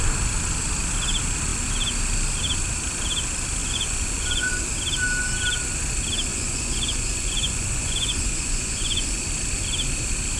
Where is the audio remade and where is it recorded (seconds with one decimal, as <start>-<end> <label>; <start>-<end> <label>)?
0.0-3.6 recorded; 3.6-4.5 remade; 4.5-6.3 recorded; 6.3-9.2 remade; 9.2-10.4 recorded